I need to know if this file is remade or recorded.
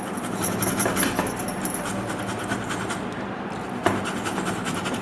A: recorded